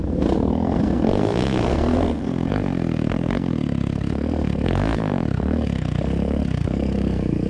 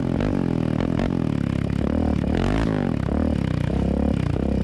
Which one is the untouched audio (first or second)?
second